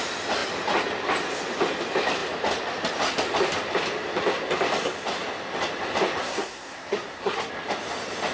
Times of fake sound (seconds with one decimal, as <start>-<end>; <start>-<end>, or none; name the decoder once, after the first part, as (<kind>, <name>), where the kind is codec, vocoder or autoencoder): 6.2-7.5 (codec, SNAC)